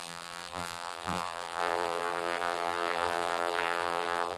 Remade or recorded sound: remade